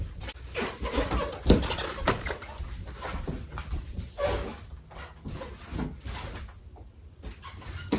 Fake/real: real